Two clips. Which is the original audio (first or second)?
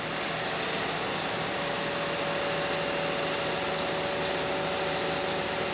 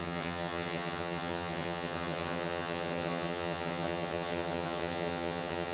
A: first